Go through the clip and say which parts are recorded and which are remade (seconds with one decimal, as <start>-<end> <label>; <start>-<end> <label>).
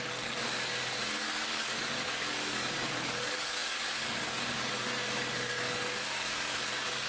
0.0-7.1 remade